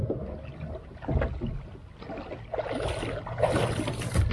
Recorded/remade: recorded